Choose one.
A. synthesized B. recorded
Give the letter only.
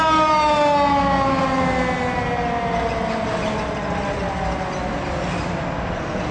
B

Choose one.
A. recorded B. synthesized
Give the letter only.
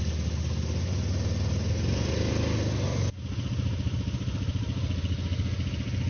A